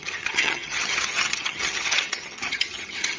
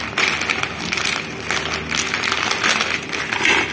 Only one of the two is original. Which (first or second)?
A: second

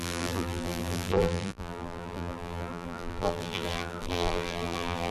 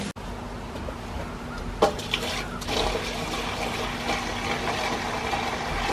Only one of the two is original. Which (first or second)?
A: second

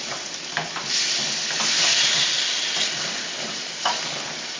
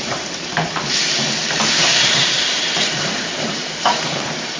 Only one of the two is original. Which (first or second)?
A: first